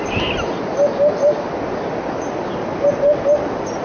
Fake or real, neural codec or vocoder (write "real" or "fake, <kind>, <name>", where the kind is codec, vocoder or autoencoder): real